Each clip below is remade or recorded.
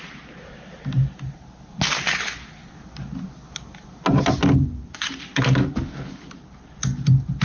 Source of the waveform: recorded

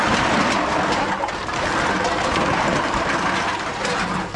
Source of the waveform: recorded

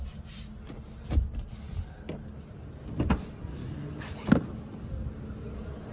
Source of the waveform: recorded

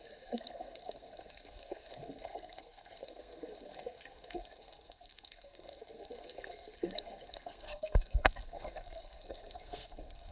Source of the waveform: remade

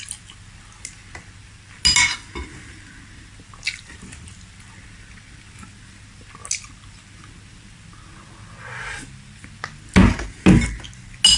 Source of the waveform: recorded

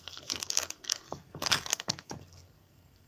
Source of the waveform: remade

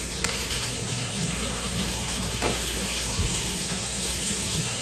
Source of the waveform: remade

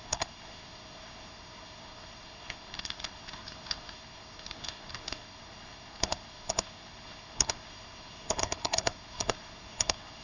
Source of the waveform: remade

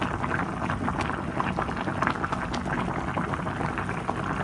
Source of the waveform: recorded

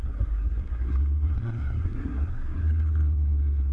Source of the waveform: remade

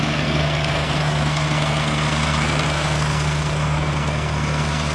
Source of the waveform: remade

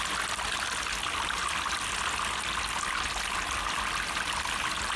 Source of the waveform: recorded